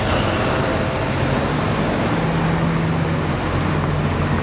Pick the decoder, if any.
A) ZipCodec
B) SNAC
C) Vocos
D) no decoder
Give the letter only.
D